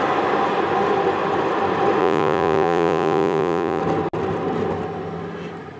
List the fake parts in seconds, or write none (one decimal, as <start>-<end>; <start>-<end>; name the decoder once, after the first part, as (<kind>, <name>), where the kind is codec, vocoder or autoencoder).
2.0-3.8 (vocoder, Vocos)